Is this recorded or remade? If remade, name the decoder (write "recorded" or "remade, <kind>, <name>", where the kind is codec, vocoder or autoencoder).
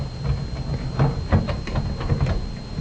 recorded